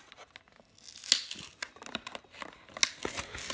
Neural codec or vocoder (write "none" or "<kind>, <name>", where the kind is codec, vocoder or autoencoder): none